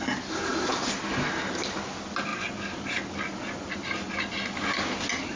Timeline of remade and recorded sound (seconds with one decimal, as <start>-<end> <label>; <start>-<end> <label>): 0.0-5.4 recorded